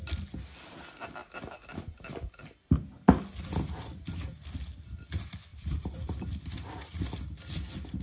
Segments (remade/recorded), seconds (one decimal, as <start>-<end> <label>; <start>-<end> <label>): 0.0-5.5 recorded; 5.5-6.3 remade; 6.3-8.0 recorded